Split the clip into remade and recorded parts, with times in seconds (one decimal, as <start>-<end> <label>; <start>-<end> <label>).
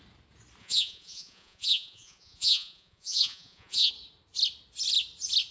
0.0-0.6 recorded; 0.6-3.9 remade; 3.9-5.5 recorded